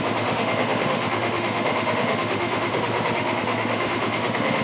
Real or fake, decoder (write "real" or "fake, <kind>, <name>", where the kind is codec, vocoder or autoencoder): fake, autoencoder, DAC-VAE